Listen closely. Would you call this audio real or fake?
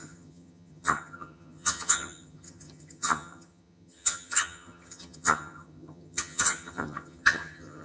fake